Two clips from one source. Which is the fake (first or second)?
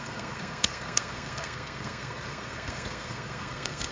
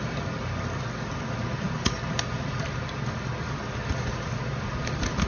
first